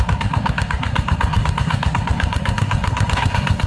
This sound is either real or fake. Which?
fake